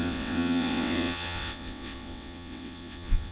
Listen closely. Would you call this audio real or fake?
fake